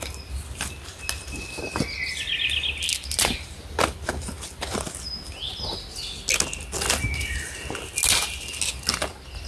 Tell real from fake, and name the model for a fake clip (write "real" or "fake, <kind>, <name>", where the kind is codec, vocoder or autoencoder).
real